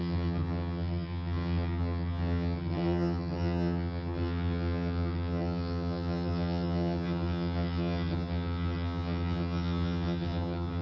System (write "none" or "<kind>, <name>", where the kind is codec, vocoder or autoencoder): vocoder, HiFi-GAN